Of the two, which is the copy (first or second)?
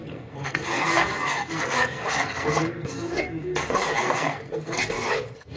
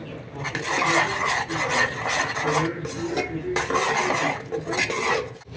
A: first